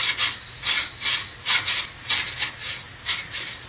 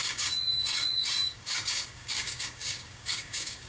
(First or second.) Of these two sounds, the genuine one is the first